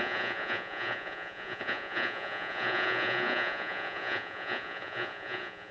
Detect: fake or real fake